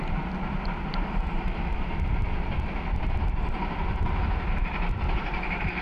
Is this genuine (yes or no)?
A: yes